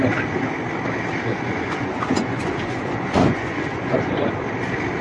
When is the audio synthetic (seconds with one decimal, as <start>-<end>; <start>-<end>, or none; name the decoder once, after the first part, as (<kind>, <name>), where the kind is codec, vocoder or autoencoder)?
1.3-4.3 (vocoder, Vocos)